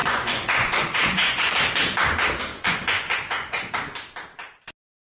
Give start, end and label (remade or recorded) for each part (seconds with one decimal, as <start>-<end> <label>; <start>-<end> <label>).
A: 0.0-1.5 remade; 1.5-2.5 recorded; 2.5-3.7 remade; 3.7-5.0 recorded